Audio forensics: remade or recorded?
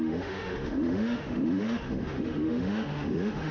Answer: remade